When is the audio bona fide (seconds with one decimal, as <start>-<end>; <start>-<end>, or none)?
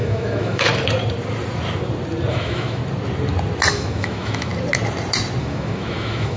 0.7-2.3; 2.8-3.7; 4.5-5.4